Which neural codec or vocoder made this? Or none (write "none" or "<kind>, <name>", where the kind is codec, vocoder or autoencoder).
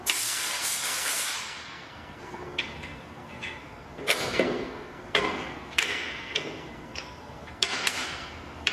codec, SNAC